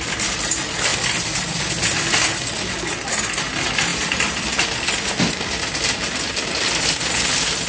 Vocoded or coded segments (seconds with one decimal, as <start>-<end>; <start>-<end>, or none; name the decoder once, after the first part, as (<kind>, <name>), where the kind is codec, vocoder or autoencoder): none